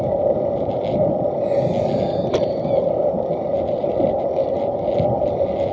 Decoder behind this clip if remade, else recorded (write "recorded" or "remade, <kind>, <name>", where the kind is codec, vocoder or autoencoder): recorded